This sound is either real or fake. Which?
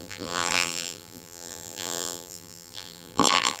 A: fake